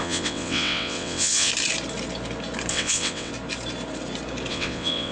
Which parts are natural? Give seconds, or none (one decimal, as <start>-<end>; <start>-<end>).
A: 1.5-2.7; 3.3-4.5